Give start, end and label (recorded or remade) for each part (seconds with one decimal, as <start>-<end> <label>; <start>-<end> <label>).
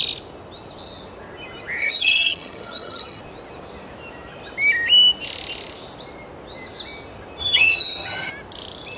0.0-1.8 recorded; 1.8-3.2 remade; 3.2-7.4 recorded; 7.4-8.3 remade; 8.3-9.0 recorded